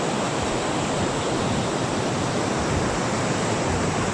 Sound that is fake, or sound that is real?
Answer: real